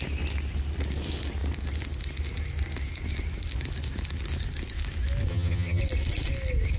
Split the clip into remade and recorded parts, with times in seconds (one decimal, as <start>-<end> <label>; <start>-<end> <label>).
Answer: 0.0-5.3 recorded; 5.3-5.8 remade; 5.8-6.8 recorded